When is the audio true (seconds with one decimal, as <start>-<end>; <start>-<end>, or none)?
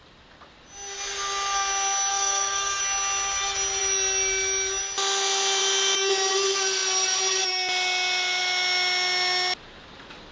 0.0-2.1; 2.8-10.3